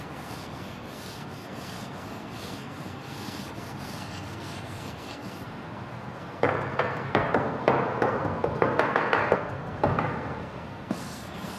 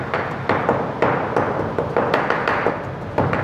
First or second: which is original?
second